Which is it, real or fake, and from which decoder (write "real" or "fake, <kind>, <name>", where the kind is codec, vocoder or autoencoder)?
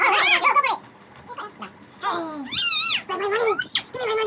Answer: real